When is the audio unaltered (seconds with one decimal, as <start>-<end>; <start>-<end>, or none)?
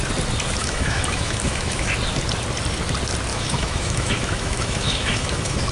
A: 0.0-0.6; 1.9-3.3